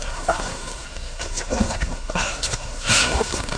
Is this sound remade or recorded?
remade